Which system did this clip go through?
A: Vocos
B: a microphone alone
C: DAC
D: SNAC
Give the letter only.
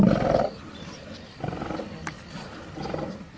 B